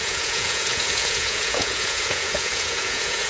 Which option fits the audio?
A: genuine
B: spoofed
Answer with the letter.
B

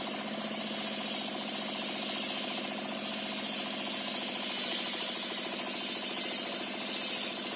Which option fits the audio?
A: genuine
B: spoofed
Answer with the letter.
A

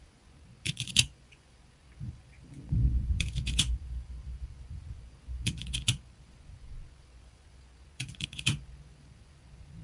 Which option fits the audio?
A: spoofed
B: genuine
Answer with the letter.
A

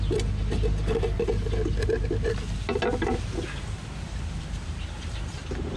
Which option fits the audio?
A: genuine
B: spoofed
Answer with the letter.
A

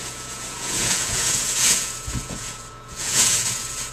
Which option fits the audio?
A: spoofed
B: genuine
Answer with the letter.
A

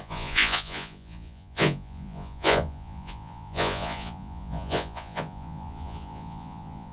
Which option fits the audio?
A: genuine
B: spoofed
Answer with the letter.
B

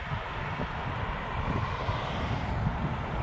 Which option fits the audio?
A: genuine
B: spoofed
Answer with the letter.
A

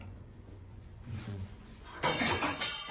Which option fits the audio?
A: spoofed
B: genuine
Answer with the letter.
A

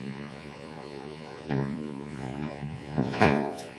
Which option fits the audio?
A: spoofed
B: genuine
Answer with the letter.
A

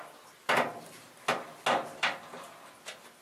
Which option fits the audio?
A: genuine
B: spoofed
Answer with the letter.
A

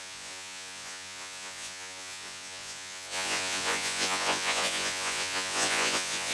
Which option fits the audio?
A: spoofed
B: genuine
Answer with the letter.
A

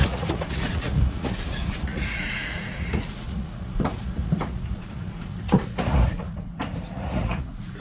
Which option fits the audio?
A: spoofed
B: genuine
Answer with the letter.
A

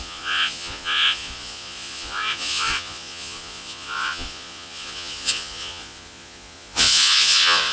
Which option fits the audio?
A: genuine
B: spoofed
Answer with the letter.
B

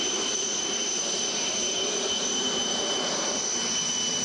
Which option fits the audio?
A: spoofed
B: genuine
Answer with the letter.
B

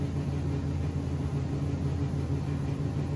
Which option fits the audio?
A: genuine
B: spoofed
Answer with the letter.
A